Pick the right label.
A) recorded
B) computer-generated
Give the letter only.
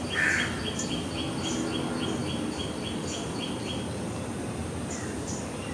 A